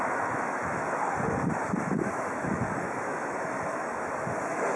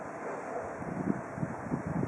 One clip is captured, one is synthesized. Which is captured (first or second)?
second